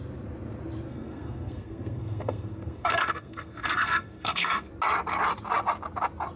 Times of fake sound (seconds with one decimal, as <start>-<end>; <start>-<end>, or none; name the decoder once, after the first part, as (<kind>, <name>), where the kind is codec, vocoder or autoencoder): 0.9-4.7 (codec, SNAC)